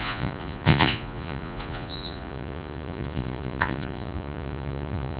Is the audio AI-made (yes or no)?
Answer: yes